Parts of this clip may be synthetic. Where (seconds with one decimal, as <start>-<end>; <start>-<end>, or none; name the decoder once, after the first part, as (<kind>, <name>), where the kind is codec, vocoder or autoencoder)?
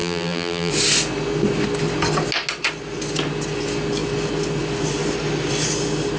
0.0-0.7 (vocoder, BigVGAN v2)